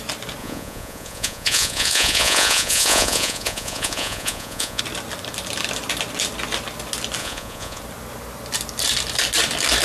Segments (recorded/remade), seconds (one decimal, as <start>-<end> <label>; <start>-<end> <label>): 0.0-0.4 recorded; 0.4-4.8 remade; 4.8-7.2 recorded; 7.2-7.8 remade; 7.8-9.8 recorded